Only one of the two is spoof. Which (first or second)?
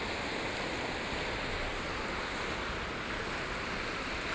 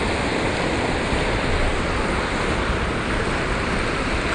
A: second